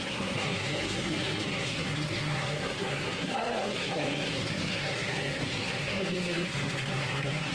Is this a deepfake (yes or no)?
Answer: yes